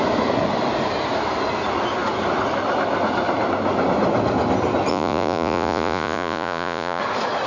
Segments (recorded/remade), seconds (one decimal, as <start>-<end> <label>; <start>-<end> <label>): 0.0-4.9 recorded; 4.9-7.0 remade; 7.0-7.5 recorded